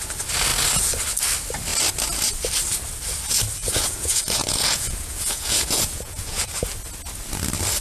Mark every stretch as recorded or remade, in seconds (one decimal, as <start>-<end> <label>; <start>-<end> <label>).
0.0-3.6 recorded; 3.6-6.6 remade; 6.6-7.8 recorded

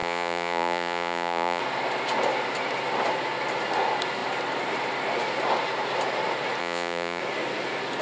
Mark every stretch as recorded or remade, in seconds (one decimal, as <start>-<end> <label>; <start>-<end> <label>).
0.0-1.6 remade; 1.6-6.6 recorded; 6.6-7.2 remade; 7.2-8.0 recorded

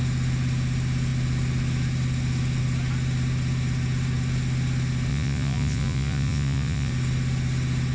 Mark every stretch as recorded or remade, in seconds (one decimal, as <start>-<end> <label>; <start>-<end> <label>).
0.0-5.1 recorded; 5.1-6.9 remade; 6.9-7.9 recorded

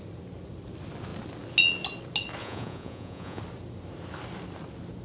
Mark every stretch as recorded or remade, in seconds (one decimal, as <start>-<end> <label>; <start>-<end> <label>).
0.0-2.4 recorded; 2.4-3.4 remade; 3.4-5.0 recorded